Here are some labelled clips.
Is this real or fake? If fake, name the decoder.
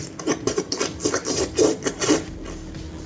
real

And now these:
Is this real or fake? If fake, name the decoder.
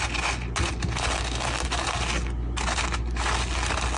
real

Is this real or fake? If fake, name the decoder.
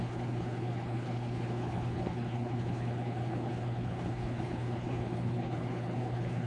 fake, codec, HILCodec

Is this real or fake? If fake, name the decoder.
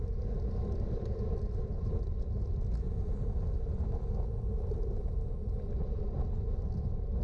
real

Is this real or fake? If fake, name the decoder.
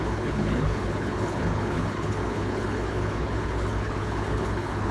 fake, codec, HILCodec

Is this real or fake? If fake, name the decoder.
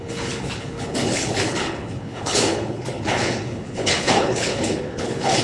fake, codec, HILCodec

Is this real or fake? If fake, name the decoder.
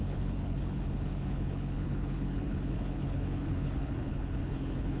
fake, codec, HILCodec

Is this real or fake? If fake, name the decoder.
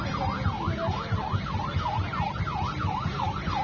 real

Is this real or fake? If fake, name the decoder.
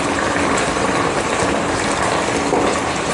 real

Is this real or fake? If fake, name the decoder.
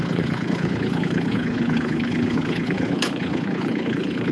fake, codec, HILCodec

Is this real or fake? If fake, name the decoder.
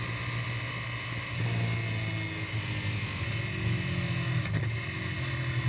real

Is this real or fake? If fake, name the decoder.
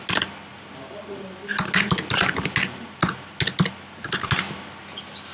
real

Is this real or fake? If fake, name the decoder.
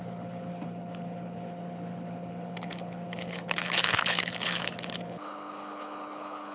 fake, codec, HILCodec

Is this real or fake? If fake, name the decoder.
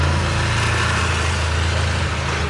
real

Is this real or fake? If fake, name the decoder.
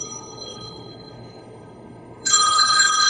fake, codec, HILCodec